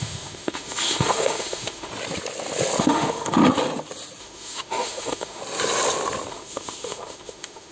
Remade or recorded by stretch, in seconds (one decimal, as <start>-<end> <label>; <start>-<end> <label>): 0.0-1.9 remade; 1.9-2.8 recorded; 2.8-3.4 remade; 3.4-4.2 recorded; 4.2-5.4 remade; 5.4-6.3 recorded; 6.3-7.7 remade